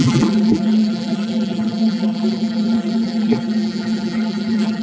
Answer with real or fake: fake